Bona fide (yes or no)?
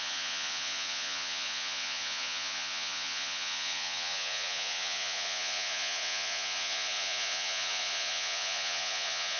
no